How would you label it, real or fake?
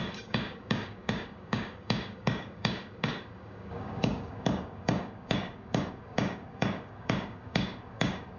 fake